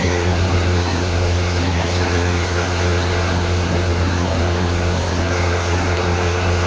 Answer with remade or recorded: remade